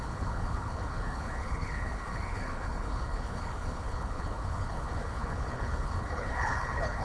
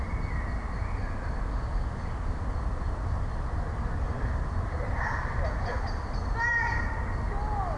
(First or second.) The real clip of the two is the second